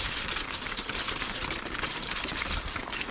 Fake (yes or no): no